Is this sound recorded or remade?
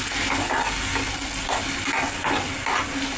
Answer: recorded